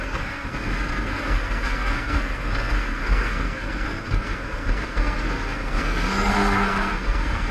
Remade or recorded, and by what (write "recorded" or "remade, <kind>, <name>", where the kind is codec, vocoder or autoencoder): remade, codec, SNAC